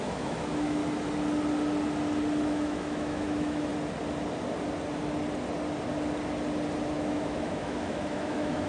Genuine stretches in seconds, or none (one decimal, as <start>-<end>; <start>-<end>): 0.8-2.4; 3.7-6.9